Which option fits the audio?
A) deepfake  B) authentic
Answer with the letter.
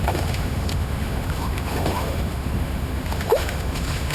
A